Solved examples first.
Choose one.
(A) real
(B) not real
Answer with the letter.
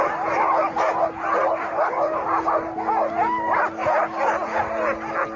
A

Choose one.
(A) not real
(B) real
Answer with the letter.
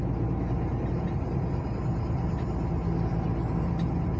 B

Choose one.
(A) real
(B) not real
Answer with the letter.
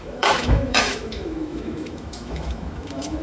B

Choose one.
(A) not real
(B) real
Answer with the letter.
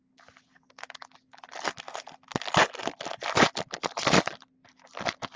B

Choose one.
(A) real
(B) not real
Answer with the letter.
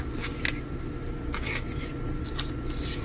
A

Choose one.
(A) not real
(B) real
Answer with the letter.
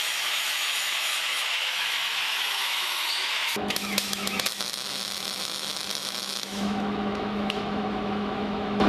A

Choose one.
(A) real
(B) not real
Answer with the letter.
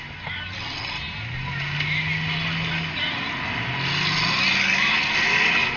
A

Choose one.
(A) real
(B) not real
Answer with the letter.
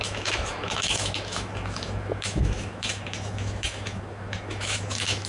B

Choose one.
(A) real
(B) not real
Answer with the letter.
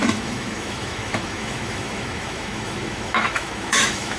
B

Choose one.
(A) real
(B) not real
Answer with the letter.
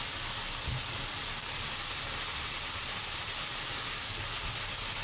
A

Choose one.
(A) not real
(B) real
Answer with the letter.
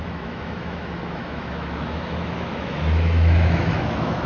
A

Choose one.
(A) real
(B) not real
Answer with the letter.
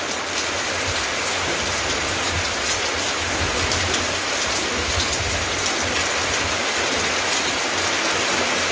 A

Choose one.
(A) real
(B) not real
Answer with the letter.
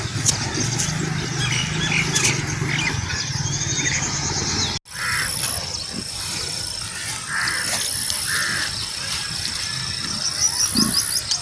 A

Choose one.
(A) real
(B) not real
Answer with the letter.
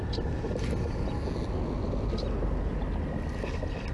A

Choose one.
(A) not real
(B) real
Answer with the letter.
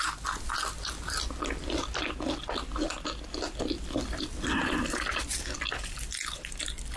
B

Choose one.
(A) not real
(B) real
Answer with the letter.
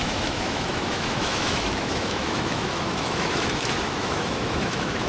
A